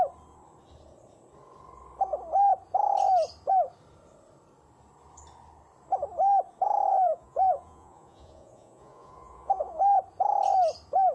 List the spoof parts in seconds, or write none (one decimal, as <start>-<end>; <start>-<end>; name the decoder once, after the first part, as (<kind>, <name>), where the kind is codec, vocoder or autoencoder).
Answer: 6.9-9.8 (vocoder, Vocos)